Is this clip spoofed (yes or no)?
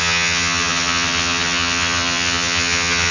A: yes